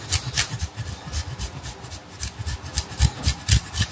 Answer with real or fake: real